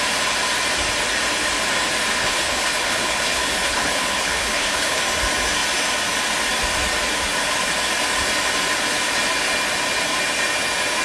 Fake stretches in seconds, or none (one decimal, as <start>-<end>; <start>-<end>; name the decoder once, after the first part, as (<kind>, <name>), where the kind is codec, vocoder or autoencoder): 2.1-5.0 (codec, HILCodec)